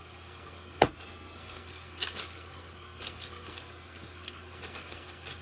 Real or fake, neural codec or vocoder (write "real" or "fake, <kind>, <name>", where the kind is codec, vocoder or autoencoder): fake, codec, SNAC